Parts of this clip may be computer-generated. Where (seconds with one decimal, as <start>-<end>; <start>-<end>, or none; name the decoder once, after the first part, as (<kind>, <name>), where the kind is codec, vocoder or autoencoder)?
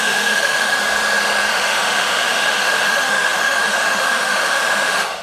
0.0-0.8 (autoencoder, DAC-VAE); 1.5-5.2